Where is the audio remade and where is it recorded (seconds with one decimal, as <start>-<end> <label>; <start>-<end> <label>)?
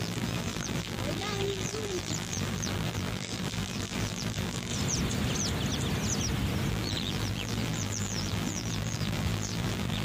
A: 0.0-4.7 remade; 4.7-6.7 recorded; 6.7-10.0 remade